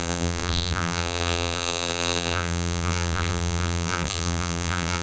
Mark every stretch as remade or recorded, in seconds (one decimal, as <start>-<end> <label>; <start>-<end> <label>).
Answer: 0.0-5.0 remade